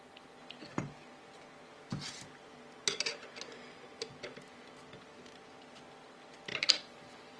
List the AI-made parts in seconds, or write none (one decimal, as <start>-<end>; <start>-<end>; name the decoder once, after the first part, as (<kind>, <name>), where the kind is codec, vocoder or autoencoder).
6.5-7.4 (vocoder, BigVGAN v2)

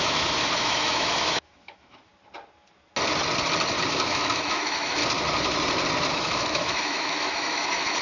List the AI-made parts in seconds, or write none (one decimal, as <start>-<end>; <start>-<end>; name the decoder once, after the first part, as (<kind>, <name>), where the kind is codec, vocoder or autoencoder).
0.0-2.1 (autoencoder, DAC-VAE); 3.9-5.0; 6.1-8.0

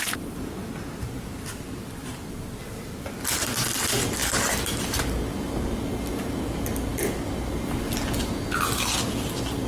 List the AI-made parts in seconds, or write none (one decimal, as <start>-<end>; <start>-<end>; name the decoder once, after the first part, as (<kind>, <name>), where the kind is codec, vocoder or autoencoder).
none

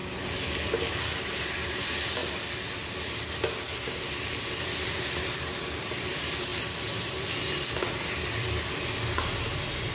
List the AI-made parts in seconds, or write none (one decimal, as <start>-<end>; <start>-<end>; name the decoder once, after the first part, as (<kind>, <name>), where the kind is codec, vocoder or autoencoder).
1.4-2.2 (vocoder, BigVGAN v2); 3.6-9.9

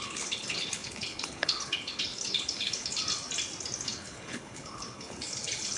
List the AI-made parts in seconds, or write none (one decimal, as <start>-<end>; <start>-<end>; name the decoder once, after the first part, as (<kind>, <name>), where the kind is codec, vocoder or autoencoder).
0.0-3.0 (codec, HILCodec); 3.9-5.8

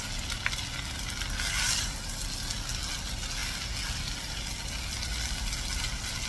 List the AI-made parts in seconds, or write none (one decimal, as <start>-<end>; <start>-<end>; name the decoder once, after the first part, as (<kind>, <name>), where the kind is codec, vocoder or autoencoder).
none